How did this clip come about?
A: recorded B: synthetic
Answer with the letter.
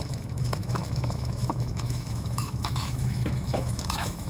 B